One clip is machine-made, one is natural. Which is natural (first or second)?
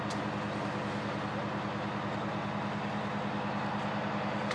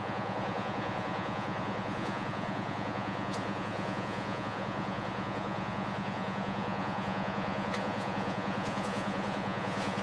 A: first